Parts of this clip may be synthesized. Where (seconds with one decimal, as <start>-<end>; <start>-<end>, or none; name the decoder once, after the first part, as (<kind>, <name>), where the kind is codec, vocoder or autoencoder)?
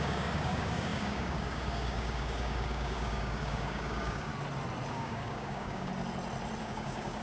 0.0-4.3 (codec, DAC); 4.9-5.9; 6.6-7.2